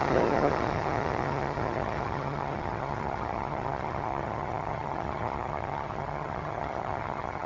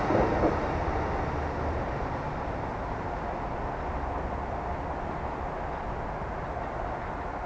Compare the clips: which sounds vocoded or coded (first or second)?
first